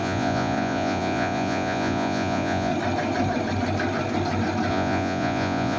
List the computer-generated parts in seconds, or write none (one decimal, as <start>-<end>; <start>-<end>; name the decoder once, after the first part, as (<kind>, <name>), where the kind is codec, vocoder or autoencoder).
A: 0.0-2.7 (vocoder, Vocos); 4.7-5.8